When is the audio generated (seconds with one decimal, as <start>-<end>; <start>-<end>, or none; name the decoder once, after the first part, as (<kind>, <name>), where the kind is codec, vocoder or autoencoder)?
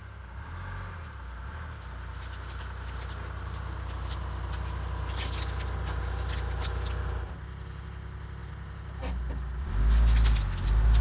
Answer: none